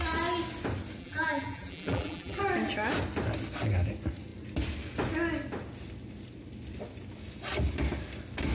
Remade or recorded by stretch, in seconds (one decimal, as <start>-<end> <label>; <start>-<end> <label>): 0.0-1.0 recorded; 1.0-2.4 remade; 2.4-8.5 recorded